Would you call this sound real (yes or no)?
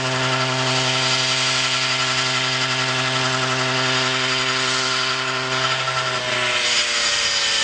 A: yes